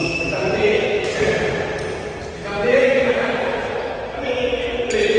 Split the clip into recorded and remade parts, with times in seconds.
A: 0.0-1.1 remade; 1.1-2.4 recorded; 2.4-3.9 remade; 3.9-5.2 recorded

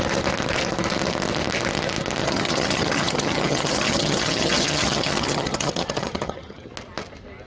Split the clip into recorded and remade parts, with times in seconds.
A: 0.0-2.2 recorded; 2.2-6.7 remade; 6.7-7.5 recorded

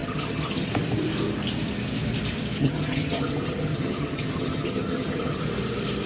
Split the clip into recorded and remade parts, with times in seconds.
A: 0.0-0.7 remade; 0.7-2.6 recorded; 2.6-5.4 remade; 5.4-6.1 recorded

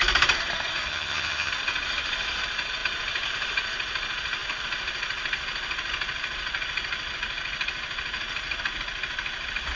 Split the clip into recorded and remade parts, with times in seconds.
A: 0.0-0.9 recorded; 0.9-1.5 remade; 1.5-9.8 recorded

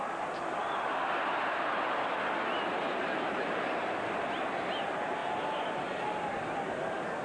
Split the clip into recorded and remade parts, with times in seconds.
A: 0.0-7.2 recorded